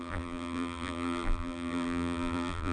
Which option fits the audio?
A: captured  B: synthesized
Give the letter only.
B